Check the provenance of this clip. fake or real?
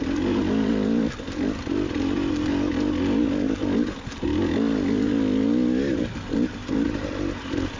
real